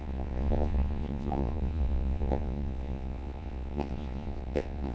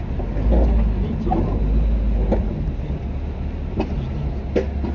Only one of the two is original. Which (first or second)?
second